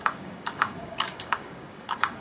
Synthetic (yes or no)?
yes